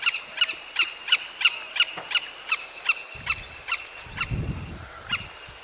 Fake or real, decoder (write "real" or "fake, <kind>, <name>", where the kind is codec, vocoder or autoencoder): real